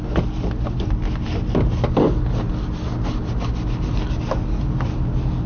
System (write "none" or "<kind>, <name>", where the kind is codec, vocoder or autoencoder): none